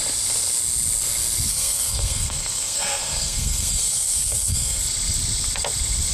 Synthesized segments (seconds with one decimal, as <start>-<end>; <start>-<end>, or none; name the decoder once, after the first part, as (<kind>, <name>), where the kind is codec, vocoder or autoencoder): 1.5-4.8 (codec, SNAC)